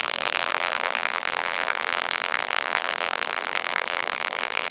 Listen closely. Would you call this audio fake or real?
fake